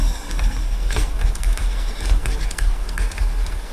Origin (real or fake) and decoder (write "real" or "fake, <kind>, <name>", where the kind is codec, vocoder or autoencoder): fake, codec, SNAC